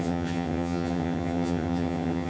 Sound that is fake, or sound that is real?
fake